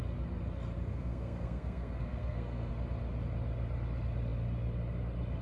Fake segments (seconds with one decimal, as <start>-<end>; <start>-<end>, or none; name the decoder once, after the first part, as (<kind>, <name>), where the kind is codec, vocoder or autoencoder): 0.9-2.7 (codec, SNAC)